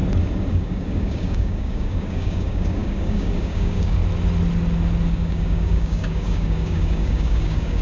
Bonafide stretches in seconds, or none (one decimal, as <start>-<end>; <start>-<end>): 0.0-0.5; 4.0-5.1